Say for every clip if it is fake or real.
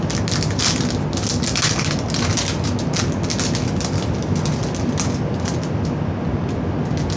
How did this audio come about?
real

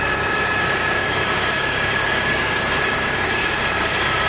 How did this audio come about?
fake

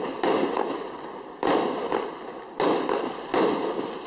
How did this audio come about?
real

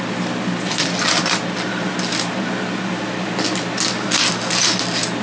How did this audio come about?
real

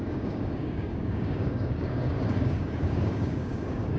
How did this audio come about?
fake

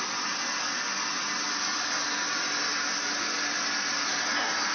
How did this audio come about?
real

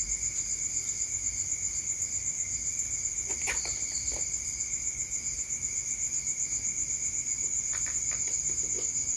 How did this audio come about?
real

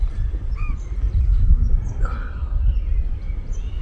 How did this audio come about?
real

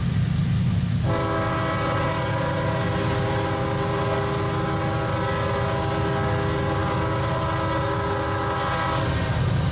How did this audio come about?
real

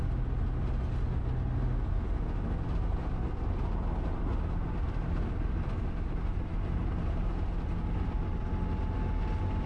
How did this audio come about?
real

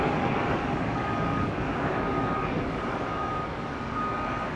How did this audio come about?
fake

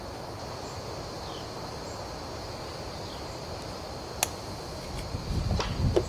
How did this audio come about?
real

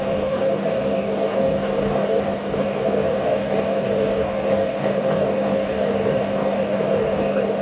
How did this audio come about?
fake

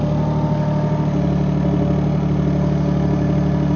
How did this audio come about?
real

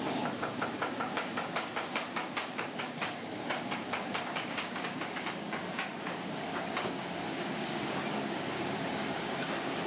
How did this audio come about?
fake